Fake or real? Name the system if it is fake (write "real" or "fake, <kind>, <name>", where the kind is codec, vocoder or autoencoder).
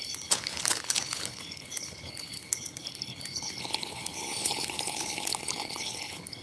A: fake, codec, HILCodec